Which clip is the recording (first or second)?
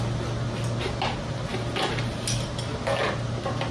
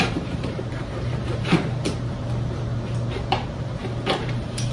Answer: first